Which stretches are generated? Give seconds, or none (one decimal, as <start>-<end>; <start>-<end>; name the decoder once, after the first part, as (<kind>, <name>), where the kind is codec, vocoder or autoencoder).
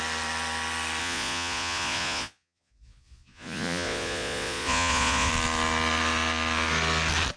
1.0-5.3 (vocoder, Vocos)